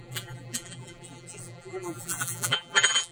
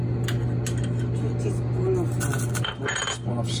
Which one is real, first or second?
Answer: second